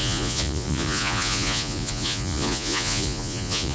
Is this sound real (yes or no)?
no